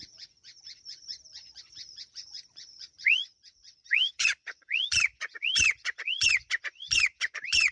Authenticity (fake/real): fake